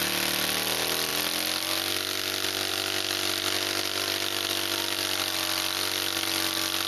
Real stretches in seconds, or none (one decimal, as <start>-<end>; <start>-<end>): 0.0-6.9